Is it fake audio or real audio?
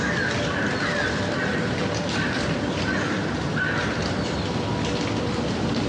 fake